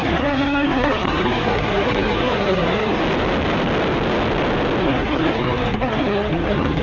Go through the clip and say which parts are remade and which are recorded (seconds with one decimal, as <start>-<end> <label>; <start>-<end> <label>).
0.0-3.0 remade; 3.0-4.8 recorded; 4.8-6.8 remade